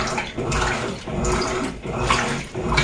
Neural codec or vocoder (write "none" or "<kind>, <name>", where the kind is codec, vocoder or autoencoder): none